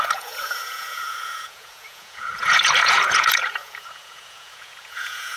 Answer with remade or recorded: remade